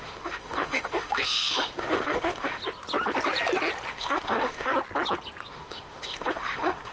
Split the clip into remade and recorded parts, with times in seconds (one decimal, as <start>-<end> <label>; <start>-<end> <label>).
0.0-2.6 remade; 2.6-3.9 recorded; 3.9-4.7 remade; 4.7-5.5 recorded; 5.5-6.9 remade